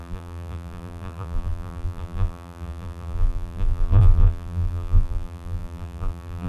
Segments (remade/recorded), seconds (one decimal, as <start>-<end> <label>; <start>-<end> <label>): 0.0-6.5 remade